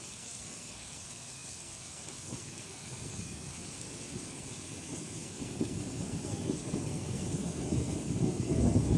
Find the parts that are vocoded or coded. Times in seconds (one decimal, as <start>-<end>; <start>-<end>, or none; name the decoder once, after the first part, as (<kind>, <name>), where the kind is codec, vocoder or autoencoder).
0.0-9.0 (codec, SNAC)